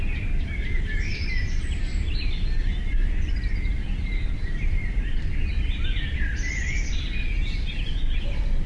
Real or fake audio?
real